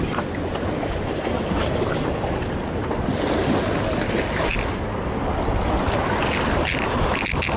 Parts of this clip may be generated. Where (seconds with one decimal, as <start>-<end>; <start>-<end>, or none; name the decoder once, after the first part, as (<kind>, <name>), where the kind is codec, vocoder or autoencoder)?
none